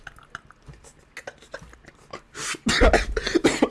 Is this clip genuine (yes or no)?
yes